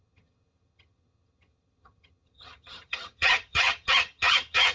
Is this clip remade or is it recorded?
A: remade